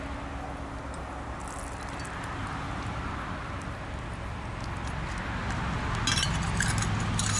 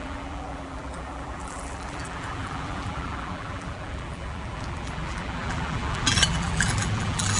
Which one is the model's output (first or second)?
second